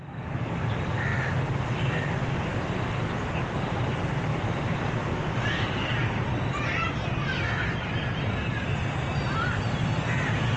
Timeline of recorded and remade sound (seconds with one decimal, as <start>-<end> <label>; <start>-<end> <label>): 0.0-10.6 recorded